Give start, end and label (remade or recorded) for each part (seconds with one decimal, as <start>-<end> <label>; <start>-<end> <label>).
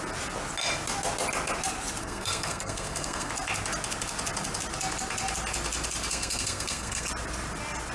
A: 0.0-2.0 recorded; 2.0-3.3 remade; 3.3-6.1 recorded; 6.1-7.1 remade; 7.1-7.9 recorded